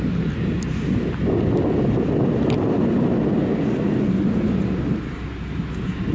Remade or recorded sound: recorded